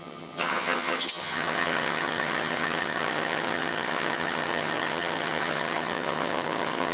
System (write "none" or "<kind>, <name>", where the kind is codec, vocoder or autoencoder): vocoder, HiFi-GAN